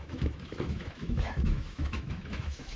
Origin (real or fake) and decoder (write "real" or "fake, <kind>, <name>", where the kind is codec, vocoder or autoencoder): fake, autoencoder, DAC-VAE